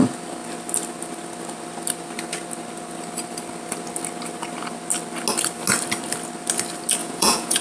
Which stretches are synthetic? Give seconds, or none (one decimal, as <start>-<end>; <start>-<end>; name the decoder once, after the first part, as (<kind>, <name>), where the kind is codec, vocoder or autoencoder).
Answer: 7.0-7.6 (vocoder, Vocos)